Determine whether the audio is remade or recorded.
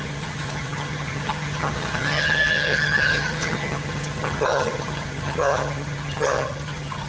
remade